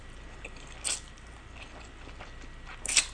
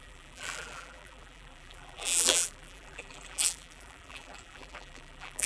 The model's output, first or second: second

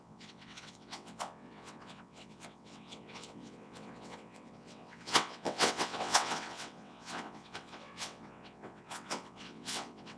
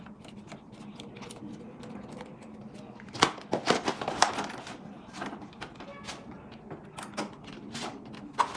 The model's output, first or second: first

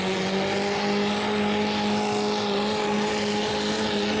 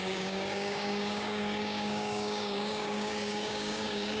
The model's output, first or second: second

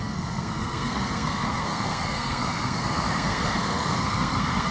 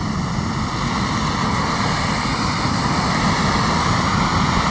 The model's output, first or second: first